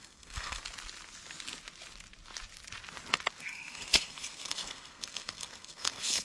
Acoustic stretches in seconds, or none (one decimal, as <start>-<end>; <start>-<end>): 0.6-3.4